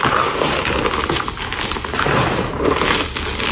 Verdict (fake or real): real